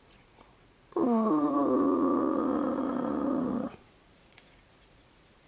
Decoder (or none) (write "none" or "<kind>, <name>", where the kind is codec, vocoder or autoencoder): vocoder, Vocos